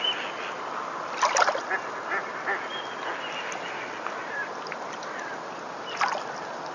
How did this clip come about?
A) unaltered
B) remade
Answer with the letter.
A